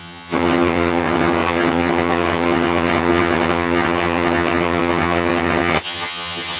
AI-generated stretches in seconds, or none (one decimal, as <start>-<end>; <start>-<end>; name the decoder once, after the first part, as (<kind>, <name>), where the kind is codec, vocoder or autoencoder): 0.0-6.6 (vocoder, HiFi-GAN)